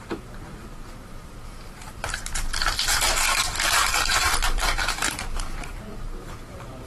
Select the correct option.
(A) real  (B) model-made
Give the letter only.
B